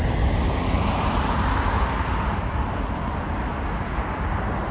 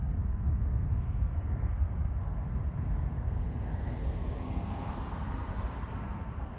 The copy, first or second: second